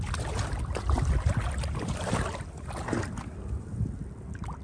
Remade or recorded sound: recorded